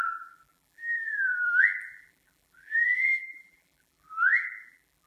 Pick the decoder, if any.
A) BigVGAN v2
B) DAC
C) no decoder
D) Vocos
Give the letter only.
A